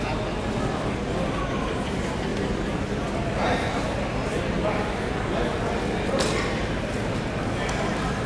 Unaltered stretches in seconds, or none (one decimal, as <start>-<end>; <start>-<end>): 0.0-8.3